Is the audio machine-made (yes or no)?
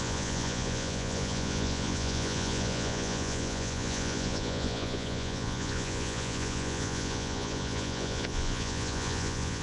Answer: yes